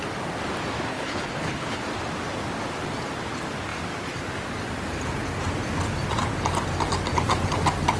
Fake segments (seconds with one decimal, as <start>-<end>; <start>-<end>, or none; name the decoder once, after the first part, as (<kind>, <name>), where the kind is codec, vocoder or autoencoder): 0.9-1.8 (codec, HILCodec)